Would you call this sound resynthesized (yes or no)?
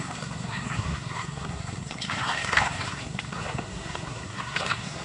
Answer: yes